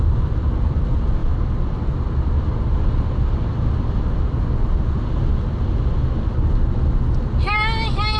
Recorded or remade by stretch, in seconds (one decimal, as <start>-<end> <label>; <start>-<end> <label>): 0.0-8.2 recorded